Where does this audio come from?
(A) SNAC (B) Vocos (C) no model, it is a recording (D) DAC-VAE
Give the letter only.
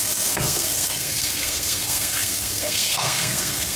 A